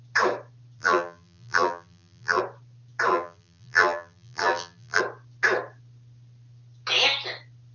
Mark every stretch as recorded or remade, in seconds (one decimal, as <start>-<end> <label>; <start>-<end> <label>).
0.0-0.8 recorded; 0.8-2.4 remade; 2.4-3.1 recorded; 3.1-5.0 remade; 5.0-7.7 recorded